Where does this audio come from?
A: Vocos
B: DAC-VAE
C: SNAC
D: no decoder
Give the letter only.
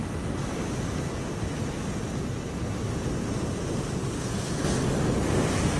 D